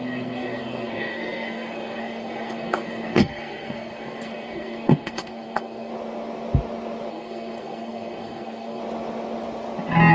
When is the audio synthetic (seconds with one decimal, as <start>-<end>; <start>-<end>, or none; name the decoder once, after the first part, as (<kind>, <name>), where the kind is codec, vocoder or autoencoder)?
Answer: 0.0-5.9 (codec, SNAC); 7.1-8.8